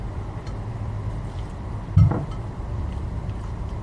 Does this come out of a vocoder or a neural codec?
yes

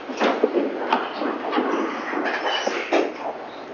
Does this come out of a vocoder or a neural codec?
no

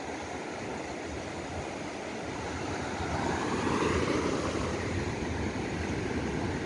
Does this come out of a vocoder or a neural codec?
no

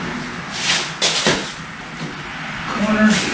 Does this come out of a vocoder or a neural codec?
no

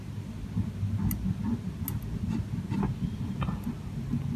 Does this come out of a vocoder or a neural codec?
no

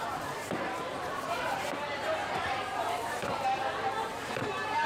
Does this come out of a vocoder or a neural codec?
yes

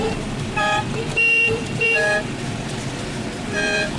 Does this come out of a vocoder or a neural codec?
yes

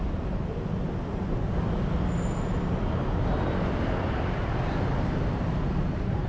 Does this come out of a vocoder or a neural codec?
no